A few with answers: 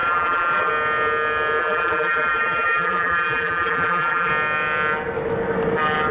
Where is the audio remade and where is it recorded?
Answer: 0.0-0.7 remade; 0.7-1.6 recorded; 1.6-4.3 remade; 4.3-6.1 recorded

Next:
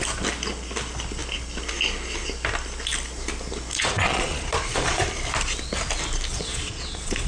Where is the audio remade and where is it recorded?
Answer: 0.0-3.8 recorded; 3.8-5.0 remade; 5.0-6.3 recorded; 6.3-7.3 remade

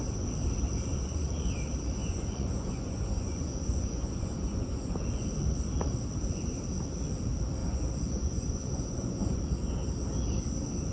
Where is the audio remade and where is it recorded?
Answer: 0.0-0.9 recorded; 0.9-1.5 remade; 1.5-2.0 recorded; 2.0-4.9 remade; 4.9-7.6 recorded; 7.6-9.4 remade; 9.4-10.9 recorded

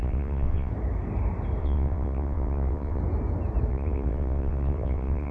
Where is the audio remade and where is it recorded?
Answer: 0.0-0.7 remade; 0.7-1.6 recorded; 1.6-3.0 remade; 3.0-3.7 recorded; 3.7-5.3 remade

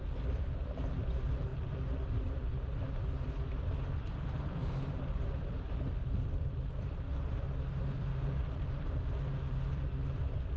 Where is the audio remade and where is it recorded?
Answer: 0.0-10.6 remade

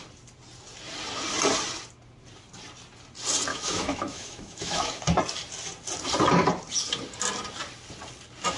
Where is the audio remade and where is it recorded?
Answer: 0.0-3.5 recorded; 3.5-5.0 remade; 5.0-8.6 recorded

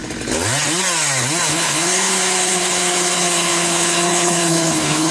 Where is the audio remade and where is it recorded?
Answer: 0.0-1.5 recorded; 1.5-5.1 remade